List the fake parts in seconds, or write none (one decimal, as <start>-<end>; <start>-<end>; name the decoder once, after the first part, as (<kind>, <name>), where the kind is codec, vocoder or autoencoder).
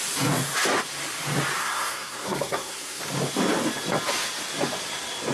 1.6-3.0 (codec, SNAC)